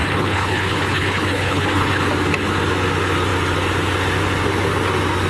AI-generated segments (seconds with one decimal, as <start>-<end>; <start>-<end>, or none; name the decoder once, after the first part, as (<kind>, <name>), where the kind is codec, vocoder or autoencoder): 0.0-2.0 (codec, HILCodec)